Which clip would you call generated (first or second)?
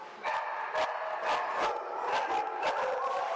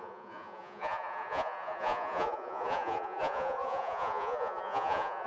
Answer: second